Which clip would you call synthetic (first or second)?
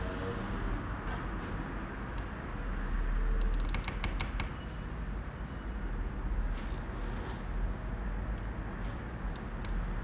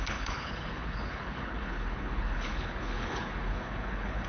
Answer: second